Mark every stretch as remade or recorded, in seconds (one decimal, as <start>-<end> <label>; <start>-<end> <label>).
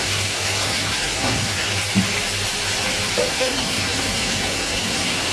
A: 0.0-1.7 remade; 1.7-3.3 recorded; 3.3-5.3 remade